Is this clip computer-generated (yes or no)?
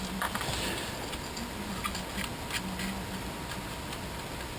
no